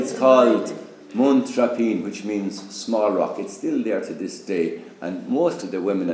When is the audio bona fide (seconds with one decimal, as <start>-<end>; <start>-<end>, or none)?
0.0-5.0